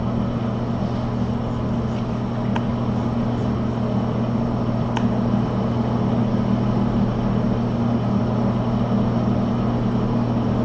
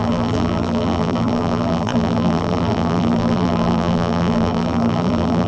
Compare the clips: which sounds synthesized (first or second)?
second